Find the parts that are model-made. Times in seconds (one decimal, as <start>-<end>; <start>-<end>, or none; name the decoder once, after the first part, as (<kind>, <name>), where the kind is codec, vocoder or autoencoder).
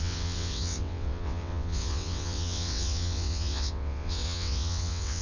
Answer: 0.0-5.2 (vocoder, WaveNeXt)